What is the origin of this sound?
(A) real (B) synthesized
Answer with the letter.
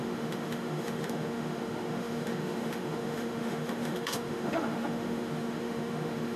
B